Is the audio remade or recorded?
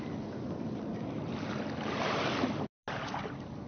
recorded